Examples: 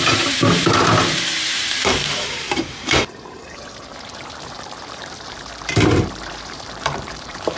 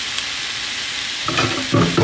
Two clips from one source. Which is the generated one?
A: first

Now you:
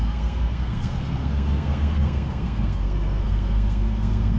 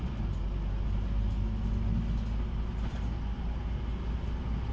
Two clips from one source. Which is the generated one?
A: first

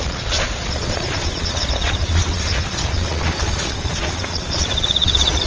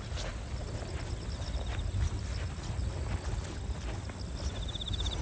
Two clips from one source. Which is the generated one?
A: first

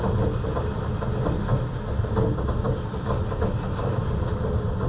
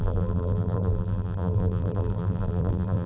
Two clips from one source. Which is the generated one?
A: second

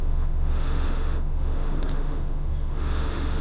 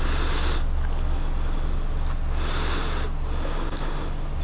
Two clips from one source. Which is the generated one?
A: first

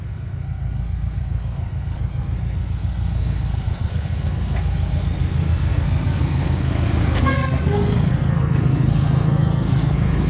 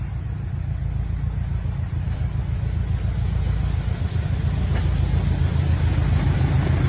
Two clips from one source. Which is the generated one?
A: first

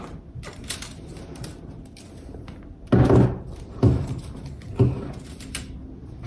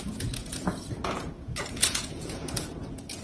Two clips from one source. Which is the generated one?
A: second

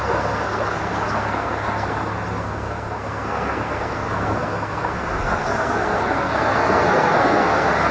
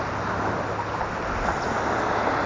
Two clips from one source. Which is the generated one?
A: first